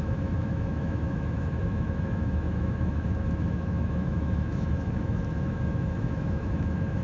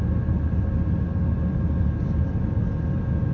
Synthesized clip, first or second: first